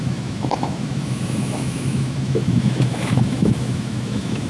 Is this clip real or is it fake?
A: fake